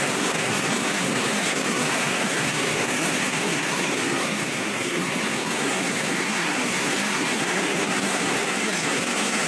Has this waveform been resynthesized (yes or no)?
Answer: yes